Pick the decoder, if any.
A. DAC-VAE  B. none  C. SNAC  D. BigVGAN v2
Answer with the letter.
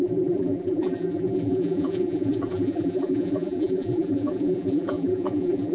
D